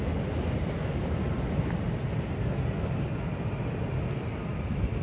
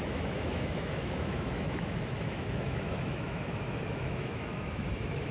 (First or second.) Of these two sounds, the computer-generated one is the second